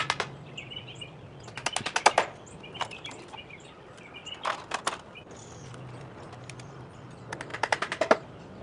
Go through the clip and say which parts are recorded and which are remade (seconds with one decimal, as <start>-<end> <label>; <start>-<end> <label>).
0.0-7.5 recorded; 7.5-8.6 remade